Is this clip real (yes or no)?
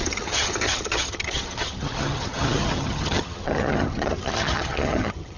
no